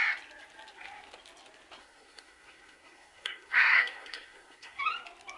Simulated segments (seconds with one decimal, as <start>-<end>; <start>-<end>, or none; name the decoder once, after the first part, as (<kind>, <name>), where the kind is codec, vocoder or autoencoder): 1.8-4.8 (codec, SNAC)